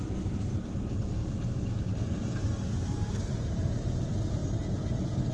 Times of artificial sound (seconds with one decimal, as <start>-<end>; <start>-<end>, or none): 0.0-1.2; 1.8-4.4